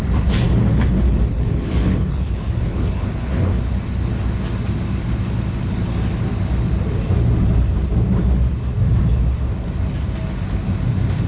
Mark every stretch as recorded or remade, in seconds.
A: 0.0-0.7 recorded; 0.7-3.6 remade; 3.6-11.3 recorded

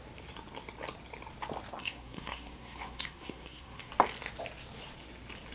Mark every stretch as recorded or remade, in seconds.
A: 0.0-1.8 recorded; 1.8-3.9 remade; 3.9-5.5 recorded

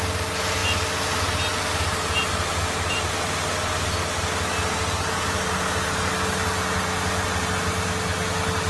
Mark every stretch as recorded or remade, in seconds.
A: 0.0-8.7 recorded

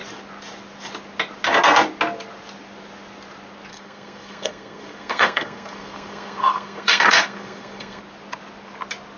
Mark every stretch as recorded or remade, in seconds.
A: 0.0-3.7 recorded; 3.7-8.0 remade; 8.0-9.2 recorded

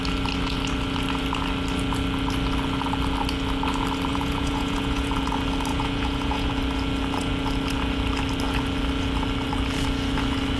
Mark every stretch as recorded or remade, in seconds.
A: 0.0-4.1 recorded; 4.1-5.1 remade; 5.1-5.7 recorded; 5.7-6.5 remade; 6.5-10.6 recorded

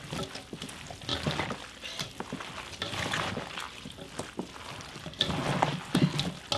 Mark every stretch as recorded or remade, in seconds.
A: 0.0-6.6 recorded

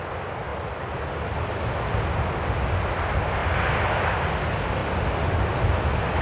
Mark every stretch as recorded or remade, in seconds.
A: 0.0-6.2 recorded

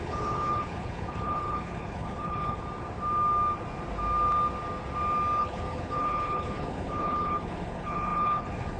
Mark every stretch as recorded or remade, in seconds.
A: 0.0-2.6 remade; 2.6-5.4 recorded; 5.4-8.8 remade